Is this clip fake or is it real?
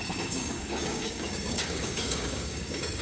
fake